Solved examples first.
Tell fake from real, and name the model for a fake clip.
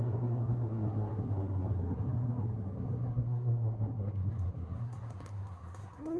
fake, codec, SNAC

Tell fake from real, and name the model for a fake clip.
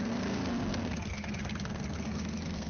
fake, codec, SNAC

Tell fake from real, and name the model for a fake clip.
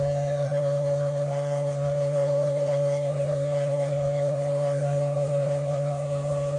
fake, codec, SNAC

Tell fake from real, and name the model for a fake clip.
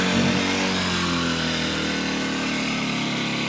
real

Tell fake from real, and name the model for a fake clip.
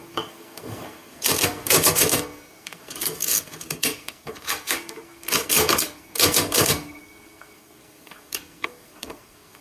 fake, codec, SNAC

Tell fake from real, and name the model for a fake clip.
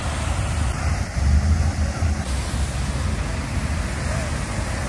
real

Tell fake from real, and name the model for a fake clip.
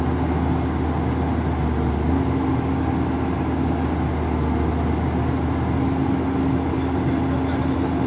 real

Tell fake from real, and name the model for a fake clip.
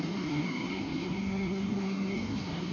fake, codec, SNAC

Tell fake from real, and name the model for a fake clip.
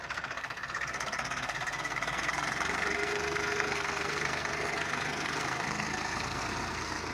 fake, codec, SNAC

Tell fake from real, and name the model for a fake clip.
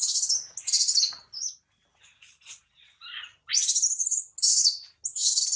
real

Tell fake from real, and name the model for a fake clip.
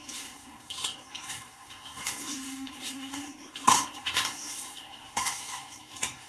fake, codec, SNAC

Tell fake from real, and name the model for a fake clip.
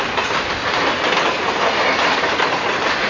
real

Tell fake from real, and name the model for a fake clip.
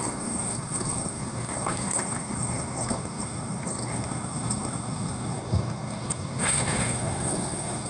fake, codec, SNAC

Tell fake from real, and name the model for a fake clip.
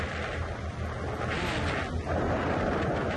real